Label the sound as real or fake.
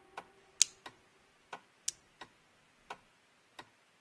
real